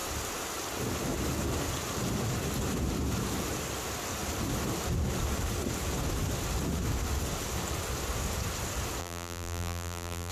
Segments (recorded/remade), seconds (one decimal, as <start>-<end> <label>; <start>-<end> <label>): 0.0-9.0 recorded; 9.0-10.3 remade